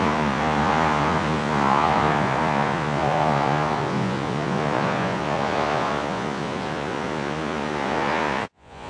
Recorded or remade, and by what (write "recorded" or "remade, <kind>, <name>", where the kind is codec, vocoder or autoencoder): remade, vocoder, Vocos